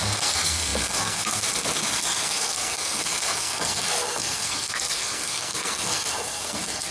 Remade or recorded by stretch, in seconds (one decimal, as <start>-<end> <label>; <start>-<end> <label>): 0.0-6.9 remade